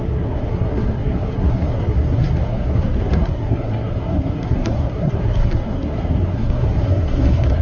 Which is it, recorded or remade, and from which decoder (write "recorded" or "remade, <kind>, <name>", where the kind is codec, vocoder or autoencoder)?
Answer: remade, codec, SNAC